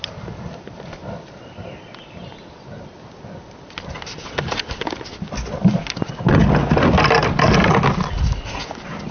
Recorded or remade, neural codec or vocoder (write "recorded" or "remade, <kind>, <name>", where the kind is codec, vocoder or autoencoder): recorded